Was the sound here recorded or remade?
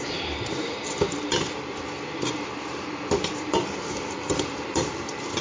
remade